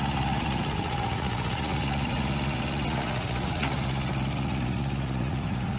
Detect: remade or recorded remade